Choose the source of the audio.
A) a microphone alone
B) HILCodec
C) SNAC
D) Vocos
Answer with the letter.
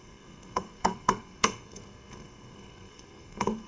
C